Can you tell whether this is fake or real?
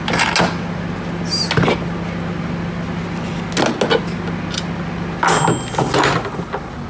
real